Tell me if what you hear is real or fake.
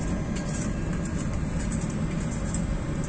real